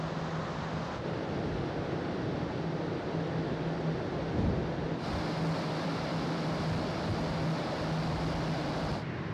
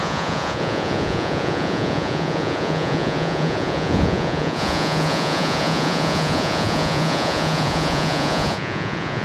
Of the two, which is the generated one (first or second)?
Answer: second